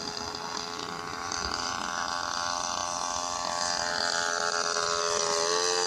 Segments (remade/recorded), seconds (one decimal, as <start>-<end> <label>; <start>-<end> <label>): 0.0-1.1 recorded; 1.1-1.8 remade; 1.8-5.9 recorded